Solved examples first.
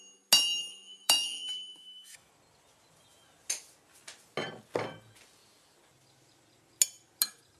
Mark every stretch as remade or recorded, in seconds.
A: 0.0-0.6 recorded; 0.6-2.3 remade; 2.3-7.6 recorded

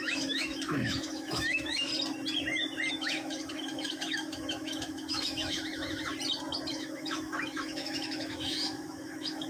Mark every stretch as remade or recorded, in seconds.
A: 0.0-1.9 remade; 1.9-2.9 recorded; 2.9-6.1 remade; 6.1-6.7 recorded; 6.7-9.5 remade

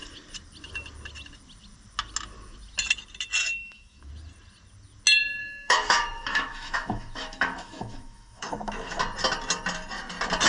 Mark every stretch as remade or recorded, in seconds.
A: 0.0-3.4 recorded; 3.4-4.1 remade; 4.1-5.4 recorded; 5.4-9.0 remade; 9.0-10.5 recorded

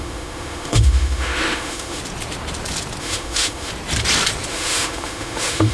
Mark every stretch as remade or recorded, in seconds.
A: 0.0-2.0 remade; 2.0-3.0 recorded; 3.0-3.7 remade; 3.7-4.5 recorded; 4.5-5.7 remade

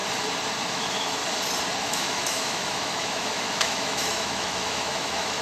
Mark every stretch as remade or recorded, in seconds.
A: 0.0-0.7 recorded; 0.7-1.2 remade; 1.2-1.8 recorded; 1.8-5.4 remade

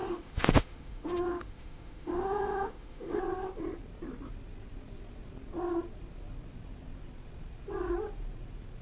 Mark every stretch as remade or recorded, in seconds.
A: 0.0-3.2 remade; 3.2-8.8 recorded